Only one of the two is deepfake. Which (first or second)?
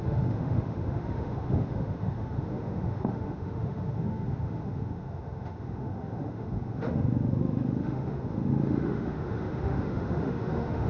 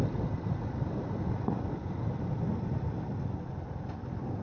first